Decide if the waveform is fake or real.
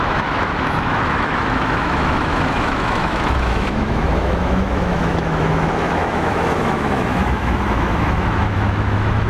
fake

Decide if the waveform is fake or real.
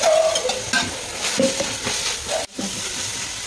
real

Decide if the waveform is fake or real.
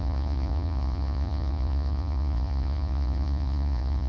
fake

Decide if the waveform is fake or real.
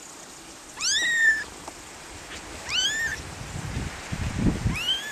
real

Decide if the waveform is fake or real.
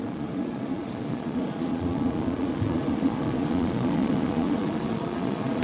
fake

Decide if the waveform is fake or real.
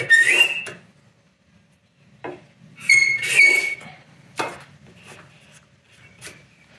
real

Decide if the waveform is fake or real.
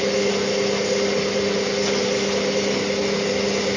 real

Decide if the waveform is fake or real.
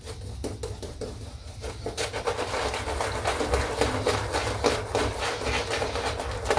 real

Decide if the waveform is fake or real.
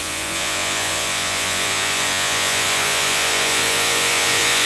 fake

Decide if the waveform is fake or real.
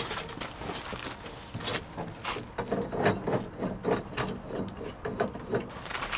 real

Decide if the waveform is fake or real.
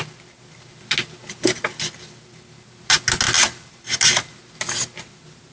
real